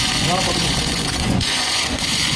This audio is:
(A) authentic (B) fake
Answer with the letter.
B